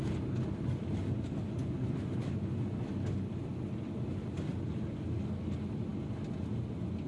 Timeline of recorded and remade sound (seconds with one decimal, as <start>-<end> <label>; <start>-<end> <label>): 0.0-7.1 recorded